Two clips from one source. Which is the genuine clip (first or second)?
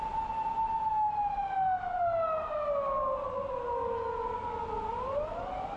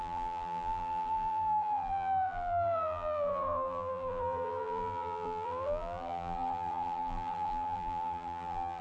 first